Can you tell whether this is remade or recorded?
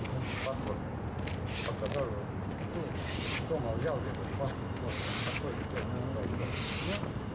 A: recorded